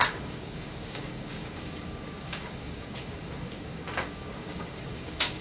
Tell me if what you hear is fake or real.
fake